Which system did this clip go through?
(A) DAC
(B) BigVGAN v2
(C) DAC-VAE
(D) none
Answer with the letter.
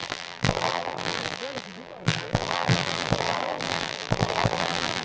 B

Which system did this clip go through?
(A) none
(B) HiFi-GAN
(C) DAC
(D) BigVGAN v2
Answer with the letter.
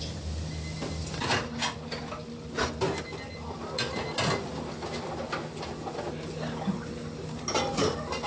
A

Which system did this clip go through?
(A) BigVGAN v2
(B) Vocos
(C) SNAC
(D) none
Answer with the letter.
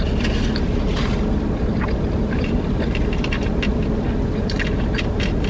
A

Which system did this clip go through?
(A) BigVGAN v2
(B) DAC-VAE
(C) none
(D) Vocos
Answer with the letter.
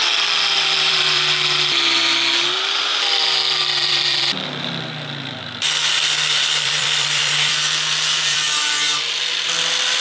A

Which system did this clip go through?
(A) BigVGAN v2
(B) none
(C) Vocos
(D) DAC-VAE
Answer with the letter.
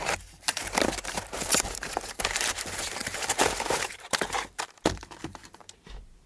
A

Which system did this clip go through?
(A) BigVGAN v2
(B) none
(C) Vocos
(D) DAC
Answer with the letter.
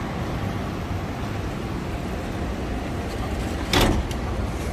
B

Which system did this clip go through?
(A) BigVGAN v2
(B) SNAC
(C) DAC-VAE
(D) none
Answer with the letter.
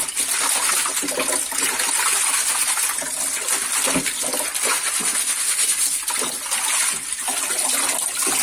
D